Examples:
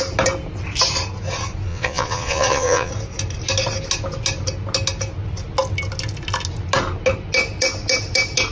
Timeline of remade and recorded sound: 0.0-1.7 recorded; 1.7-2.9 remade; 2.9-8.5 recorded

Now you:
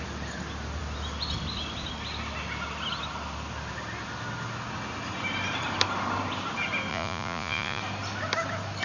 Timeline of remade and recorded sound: 0.0-6.9 recorded; 6.9-7.8 remade; 7.8-8.8 recorded

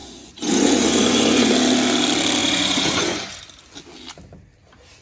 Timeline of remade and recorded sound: 0.0-1.5 remade; 1.5-2.4 recorded; 2.4-3.4 remade; 3.4-5.0 recorded

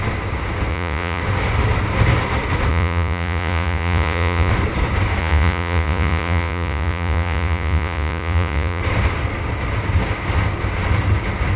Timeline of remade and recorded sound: 0.0-0.7 recorded; 0.7-1.2 remade; 1.2-2.7 recorded; 2.7-4.5 remade; 4.5-5.2 recorded; 5.2-8.8 remade; 8.8-11.6 recorded

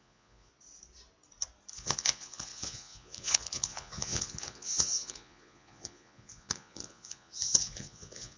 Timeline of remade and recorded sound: 0.0-0.5 remade; 0.5-1.7 recorded; 1.7-8.4 remade

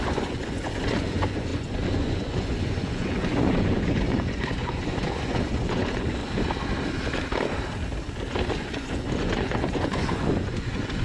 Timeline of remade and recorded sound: 0.0-6.2 remade; 6.2-8.5 recorded; 8.5-11.0 remade

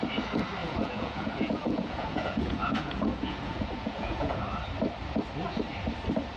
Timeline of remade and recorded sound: 0.0-0.6 recorded; 0.6-4.4 remade; 4.4-6.4 recorded